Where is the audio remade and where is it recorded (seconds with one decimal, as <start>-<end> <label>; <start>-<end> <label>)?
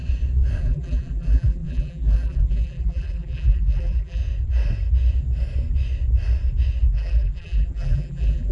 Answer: 0.0-0.6 recorded; 0.6-4.2 remade; 4.2-6.9 recorded; 6.9-8.5 remade